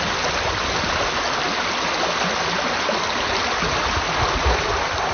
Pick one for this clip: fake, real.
real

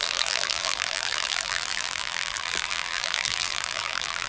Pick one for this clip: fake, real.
fake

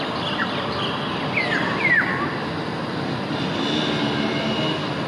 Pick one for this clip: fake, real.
real